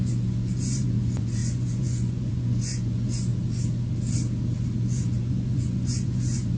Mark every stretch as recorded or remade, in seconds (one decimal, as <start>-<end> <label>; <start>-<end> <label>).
0.0-3.3 remade; 3.3-4.8 recorded; 4.8-6.6 remade